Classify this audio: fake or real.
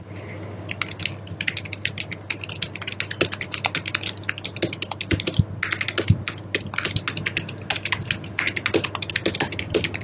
real